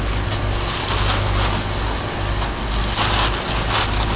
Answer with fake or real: real